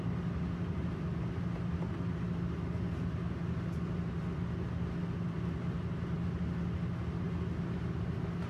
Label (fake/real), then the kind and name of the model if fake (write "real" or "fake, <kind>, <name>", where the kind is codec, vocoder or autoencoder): real